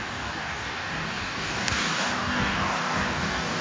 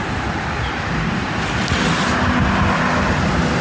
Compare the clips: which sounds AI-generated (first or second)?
first